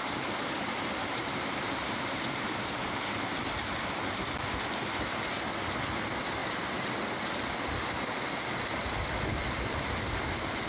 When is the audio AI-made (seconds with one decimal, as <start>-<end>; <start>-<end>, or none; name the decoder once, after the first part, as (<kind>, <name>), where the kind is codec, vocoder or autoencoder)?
0.0-3.0 (vocoder, BigVGAN v2); 6.4-6.9; 9.3-10.2